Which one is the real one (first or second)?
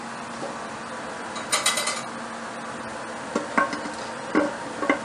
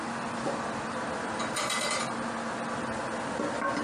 first